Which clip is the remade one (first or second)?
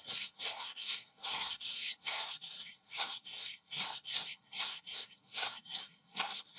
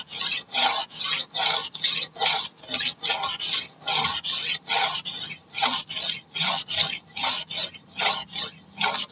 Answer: first